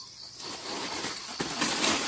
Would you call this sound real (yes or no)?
yes